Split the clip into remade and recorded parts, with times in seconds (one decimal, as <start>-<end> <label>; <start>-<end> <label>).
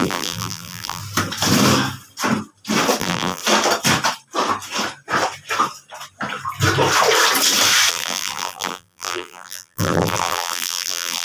0.0-1.0 remade; 1.0-3.0 recorded; 3.0-3.4 remade; 3.4-7.9 recorded; 7.9-11.2 remade